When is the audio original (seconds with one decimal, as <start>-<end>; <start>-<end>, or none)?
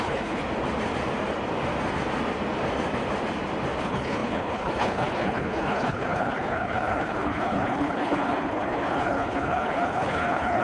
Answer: 0.4-3.8